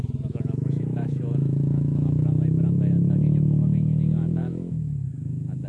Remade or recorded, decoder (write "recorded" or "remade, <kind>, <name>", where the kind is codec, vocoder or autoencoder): remade, autoencoder, DAC-VAE